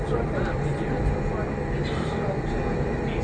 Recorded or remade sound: recorded